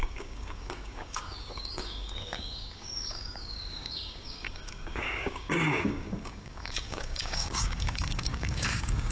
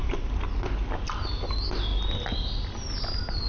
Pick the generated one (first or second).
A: first